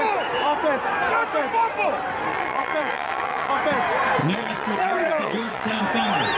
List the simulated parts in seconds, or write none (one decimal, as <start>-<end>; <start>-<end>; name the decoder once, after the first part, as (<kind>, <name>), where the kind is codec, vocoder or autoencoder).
2.3-3.5 (vocoder, WaveNeXt); 4.2-5.8